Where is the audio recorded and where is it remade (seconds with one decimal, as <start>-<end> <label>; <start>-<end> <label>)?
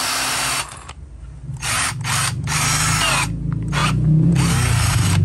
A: 0.0-5.2 recorded